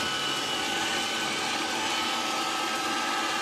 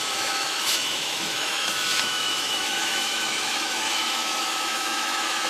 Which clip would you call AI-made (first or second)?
second